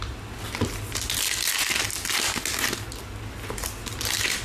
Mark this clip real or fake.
real